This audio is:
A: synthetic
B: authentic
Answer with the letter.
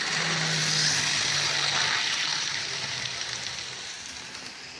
B